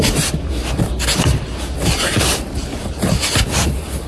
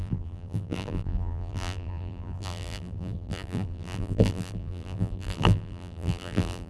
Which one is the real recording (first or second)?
first